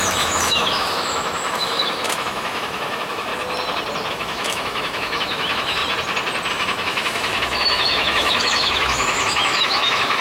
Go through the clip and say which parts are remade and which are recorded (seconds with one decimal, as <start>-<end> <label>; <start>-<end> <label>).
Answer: 0.0-3.3 remade; 3.3-4.1 recorded; 4.1-5.8 remade; 5.8-6.5 recorded; 6.5-10.2 remade